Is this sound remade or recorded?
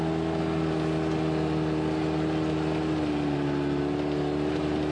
recorded